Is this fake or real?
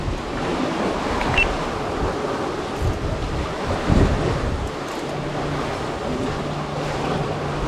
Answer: real